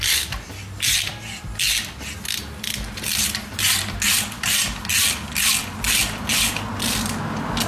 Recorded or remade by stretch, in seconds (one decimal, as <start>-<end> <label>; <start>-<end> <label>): 0.0-7.7 recorded